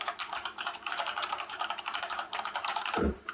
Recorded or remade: remade